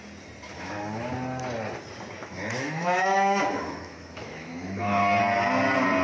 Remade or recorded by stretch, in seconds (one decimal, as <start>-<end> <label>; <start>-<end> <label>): 0.0-0.5 recorded; 0.5-1.1 remade; 1.1-2.2 recorded; 2.2-5.2 remade; 5.2-6.0 recorded